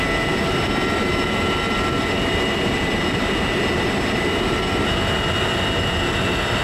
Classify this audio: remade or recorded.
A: recorded